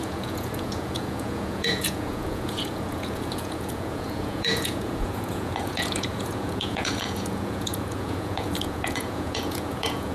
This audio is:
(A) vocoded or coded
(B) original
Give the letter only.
A